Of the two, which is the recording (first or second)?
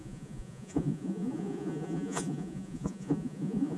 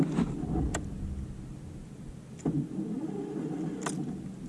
second